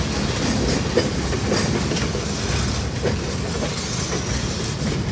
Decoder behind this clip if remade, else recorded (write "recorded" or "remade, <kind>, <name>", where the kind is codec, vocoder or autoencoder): recorded